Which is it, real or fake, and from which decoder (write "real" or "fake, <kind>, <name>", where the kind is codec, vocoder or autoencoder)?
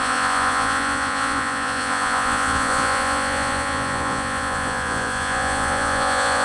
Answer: fake, vocoder, Vocos